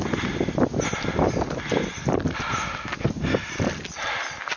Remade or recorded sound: recorded